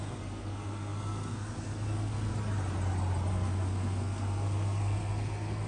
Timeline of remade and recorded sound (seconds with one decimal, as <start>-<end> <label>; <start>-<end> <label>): 0.0-2.3 remade; 2.3-3.3 recorded; 3.3-5.7 remade